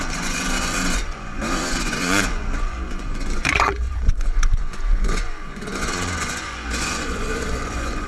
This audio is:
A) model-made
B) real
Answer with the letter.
A